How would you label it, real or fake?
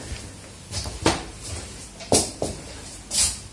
real